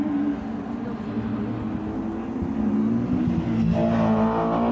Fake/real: real